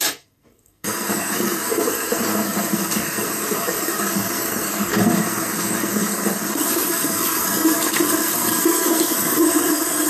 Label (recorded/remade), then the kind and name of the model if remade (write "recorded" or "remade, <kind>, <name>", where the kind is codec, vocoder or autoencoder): remade, codec, SNAC